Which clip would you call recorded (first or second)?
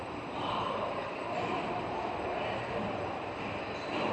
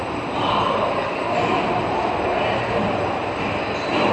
second